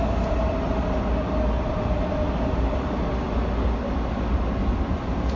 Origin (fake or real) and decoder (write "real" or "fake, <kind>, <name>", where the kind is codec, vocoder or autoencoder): real